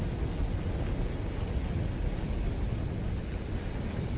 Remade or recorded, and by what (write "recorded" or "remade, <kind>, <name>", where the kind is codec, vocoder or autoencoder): recorded